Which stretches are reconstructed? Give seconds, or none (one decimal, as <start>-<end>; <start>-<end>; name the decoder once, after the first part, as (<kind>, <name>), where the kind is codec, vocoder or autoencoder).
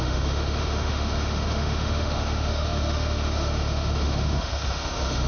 0.0-5.3 (autoencoder, DAC-VAE)